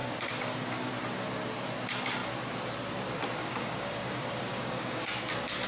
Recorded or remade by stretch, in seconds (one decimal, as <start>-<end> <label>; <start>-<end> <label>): 0.0-0.9 remade; 0.9-3.4 recorded; 3.4-5.1 remade; 5.1-5.7 recorded